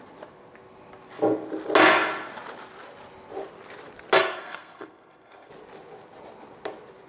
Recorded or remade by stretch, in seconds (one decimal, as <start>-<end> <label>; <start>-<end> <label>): 0.0-4.2 recorded; 4.2-5.5 remade; 5.5-7.1 recorded